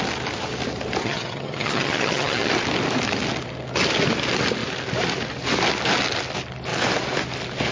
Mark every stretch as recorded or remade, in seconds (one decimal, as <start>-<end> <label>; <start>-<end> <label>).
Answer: 0.0-1.0 recorded; 1.0-2.5 remade; 2.5-7.7 recorded